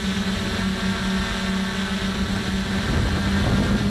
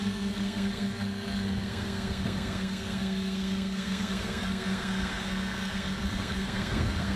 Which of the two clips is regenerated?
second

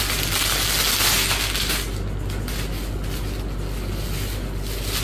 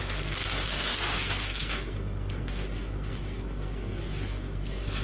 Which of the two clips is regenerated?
second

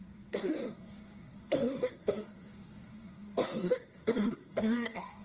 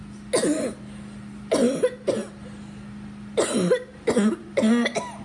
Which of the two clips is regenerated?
first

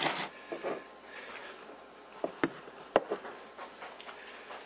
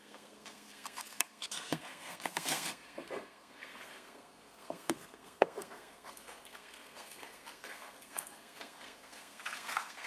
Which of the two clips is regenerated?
second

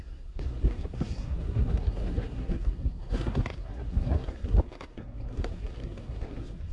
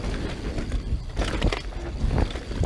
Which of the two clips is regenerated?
first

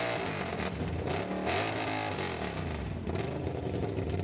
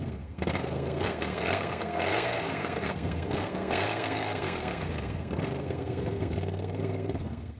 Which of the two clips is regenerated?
second